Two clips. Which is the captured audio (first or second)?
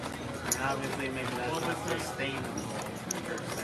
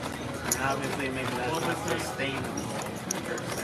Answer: first